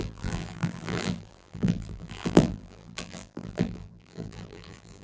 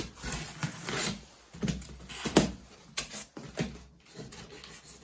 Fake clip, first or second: first